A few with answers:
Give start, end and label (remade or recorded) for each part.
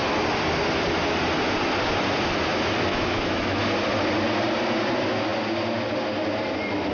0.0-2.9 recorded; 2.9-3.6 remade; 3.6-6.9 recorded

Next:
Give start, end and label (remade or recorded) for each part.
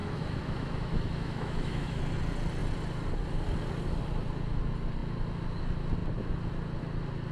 0.0-2.0 remade; 2.0-7.3 recorded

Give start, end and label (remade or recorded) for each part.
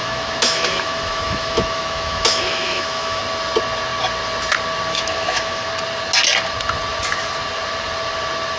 0.0-3.2 remade; 3.2-4.9 recorded; 4.9-5.7 remade; 5.7-8.6 recorded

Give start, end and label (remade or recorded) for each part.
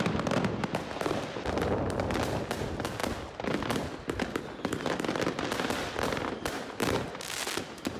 0.0-8.0 recorded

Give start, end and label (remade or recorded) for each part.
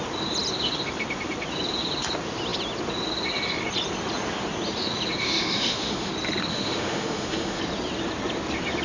0.0-5.2 recorded; 5.2-6.1 remade; 6.1-6.5 recorded; 6.5-7.6 remade; 7.6-8.8 recorded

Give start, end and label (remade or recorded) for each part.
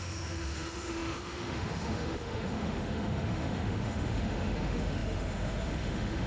0.0-6.3 remade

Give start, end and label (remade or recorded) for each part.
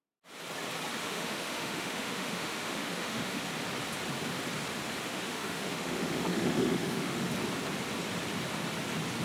0.0-1.0 recorded; 1.0-3.4 remade; 3.4-5.1 recorded; 5.1-7.3 remade; 7.3-9.2 recorded